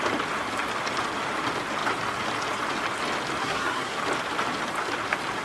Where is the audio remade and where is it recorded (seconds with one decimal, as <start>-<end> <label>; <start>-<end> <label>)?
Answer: 0.0-3.4 recorded; 3.4-4.0 remade; 4.0-5.4 recorded